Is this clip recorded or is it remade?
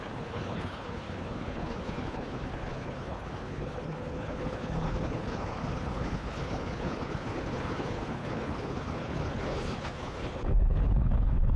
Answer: remade